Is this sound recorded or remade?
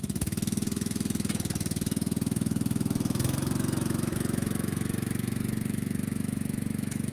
remade